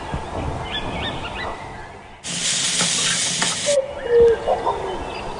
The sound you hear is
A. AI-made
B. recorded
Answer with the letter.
B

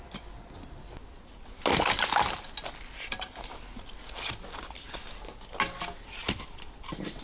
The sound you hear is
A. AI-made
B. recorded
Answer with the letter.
B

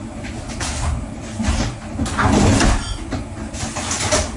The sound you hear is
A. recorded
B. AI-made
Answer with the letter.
A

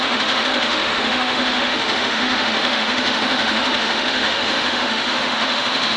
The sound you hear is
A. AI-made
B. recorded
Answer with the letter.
A